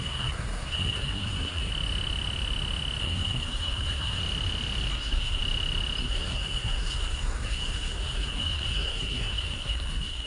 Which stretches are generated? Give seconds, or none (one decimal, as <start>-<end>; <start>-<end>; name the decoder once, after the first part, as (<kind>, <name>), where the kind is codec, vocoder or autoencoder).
0.0-1.7 (codec, SNAC); 3.0-4.2; 4.9-5.4; 6.0-10.3